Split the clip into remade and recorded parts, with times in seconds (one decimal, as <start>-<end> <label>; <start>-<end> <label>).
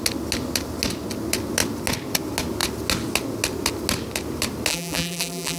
0.0-4.7 recorded; 4.7-5.6 remade